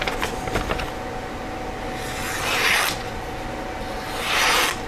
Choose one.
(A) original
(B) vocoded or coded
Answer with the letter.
A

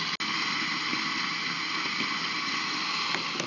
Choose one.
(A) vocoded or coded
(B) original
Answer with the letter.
B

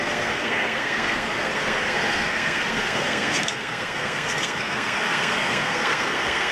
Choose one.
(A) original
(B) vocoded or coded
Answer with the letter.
B